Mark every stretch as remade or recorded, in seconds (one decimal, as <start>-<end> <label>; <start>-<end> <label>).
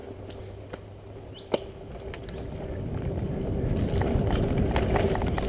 0.0-5.5 recorded